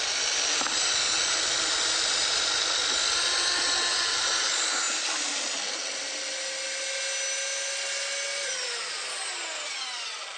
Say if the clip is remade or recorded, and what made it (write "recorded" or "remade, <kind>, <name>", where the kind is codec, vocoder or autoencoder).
recorded